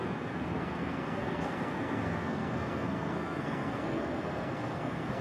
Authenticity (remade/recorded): remade